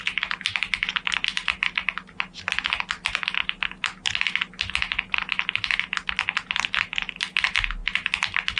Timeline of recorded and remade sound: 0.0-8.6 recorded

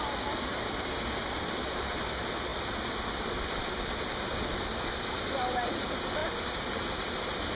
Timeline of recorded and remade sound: 0.0-7.5 recorded